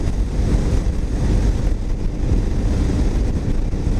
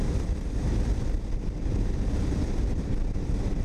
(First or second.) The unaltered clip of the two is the first